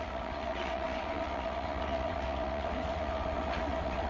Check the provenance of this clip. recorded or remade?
remade